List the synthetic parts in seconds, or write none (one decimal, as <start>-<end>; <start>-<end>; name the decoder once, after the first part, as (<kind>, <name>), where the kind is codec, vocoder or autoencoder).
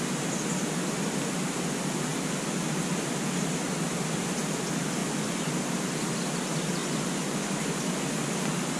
5.0-5.5 (vocoder, Vocos); 6.8-7.8